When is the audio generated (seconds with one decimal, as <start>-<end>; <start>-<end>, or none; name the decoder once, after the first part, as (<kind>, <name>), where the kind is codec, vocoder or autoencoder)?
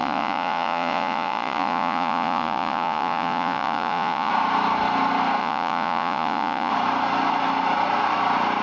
0.0-4.3 (vocoder, Vocos); 5.4-6.7